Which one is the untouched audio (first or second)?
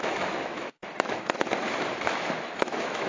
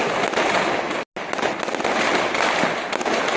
second